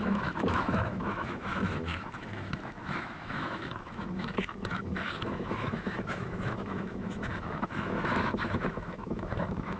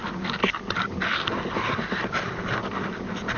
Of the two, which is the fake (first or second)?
first